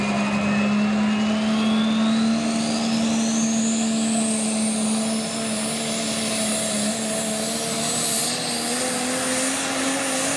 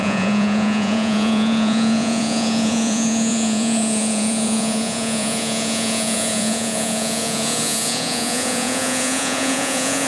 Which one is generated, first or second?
second